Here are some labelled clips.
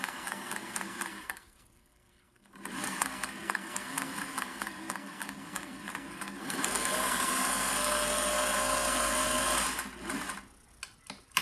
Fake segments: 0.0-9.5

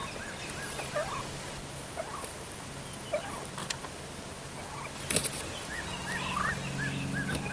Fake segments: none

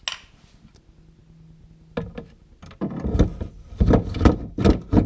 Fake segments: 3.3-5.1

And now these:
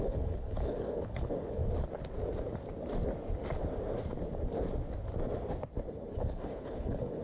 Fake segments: 0.0-1.6; 5.9-7.2